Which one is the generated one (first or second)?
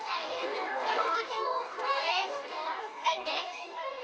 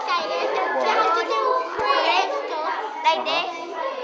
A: first